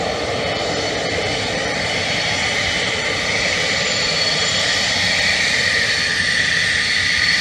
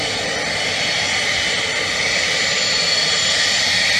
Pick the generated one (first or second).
first